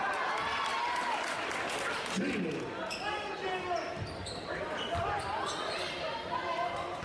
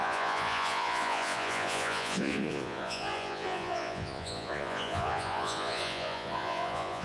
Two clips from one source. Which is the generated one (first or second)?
second